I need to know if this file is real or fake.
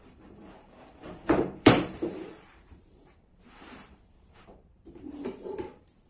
fake